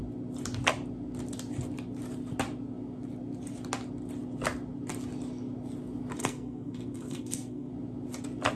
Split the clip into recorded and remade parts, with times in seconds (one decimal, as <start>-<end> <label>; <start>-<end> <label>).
0.0-6.2 recorded; 6.2-7.7 remade; 7.7-8.6 recorded